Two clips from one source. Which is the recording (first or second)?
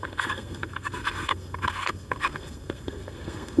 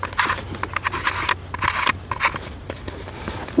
second